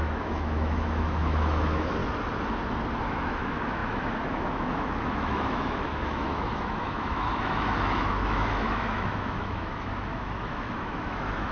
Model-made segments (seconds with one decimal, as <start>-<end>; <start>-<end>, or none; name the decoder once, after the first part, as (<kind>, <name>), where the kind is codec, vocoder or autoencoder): 0.0-2.0 (autoencoder, DAC-VAE); 3.0-11.5